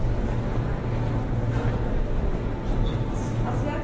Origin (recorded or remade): recorded